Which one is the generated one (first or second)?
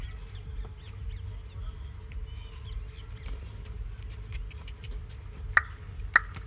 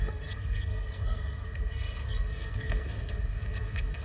second